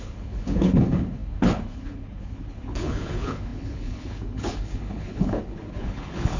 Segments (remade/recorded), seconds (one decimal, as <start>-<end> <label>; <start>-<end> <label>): 0.0-6.4 remade